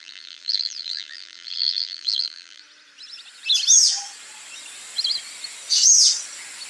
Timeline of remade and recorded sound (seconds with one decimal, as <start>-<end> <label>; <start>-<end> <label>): 0.0-2.6 remade; 2.6-6.7 recorded